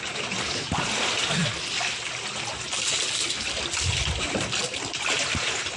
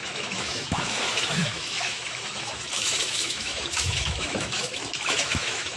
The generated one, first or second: second